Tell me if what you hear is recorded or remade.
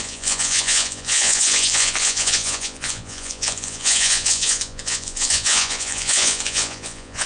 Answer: remade